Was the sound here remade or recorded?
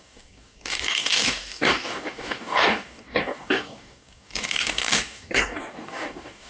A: remade